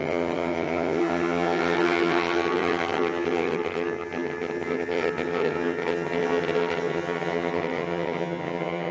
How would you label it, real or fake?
fake